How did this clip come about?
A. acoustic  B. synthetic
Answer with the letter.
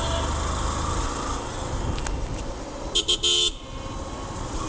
A